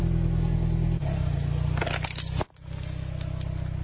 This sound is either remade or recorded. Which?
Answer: recorded